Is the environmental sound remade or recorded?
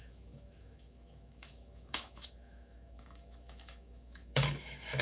remade